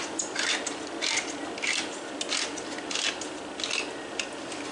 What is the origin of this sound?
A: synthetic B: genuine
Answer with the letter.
B